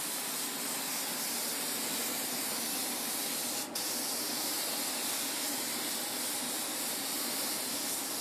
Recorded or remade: recorded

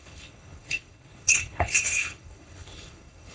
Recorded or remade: remade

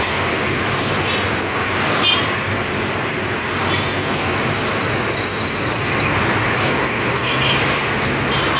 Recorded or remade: recorded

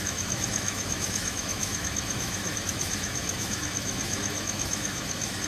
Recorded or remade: remade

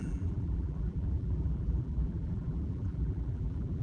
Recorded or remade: remade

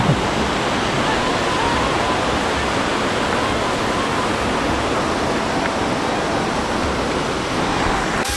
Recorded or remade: recorded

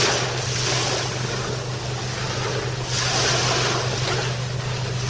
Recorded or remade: recorded